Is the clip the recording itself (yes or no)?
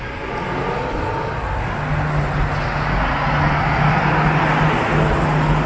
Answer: yes